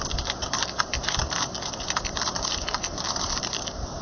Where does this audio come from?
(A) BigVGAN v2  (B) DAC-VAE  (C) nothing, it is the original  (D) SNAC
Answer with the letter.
A